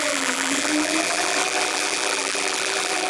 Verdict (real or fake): fake